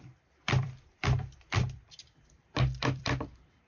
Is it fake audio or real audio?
fake